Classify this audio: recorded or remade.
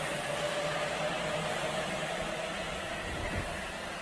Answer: recorded